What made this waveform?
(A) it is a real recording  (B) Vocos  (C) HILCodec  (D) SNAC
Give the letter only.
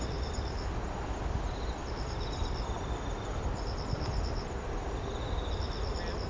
A